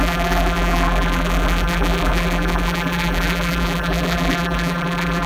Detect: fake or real fake